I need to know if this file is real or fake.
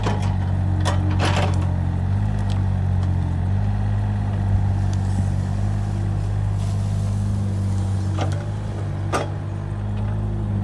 real